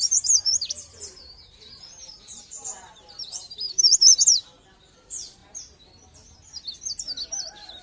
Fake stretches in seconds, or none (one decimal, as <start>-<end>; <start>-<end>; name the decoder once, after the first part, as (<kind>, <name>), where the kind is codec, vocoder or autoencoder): 0.0-5.4 (vocoder, BigVGAN v2); 7.3-7.8